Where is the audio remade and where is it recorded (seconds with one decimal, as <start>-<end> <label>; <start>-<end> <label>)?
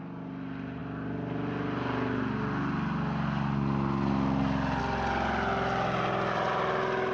0.0-7.1 recorded